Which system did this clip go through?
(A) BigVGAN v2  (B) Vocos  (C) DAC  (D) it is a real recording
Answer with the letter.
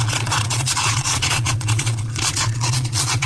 B